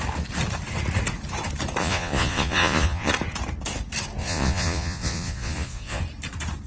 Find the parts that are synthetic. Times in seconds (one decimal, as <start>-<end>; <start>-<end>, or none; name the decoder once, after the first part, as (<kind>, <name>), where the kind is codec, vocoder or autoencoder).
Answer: 1.8-3.1 (vocoder, Vocos); 4.2-6.0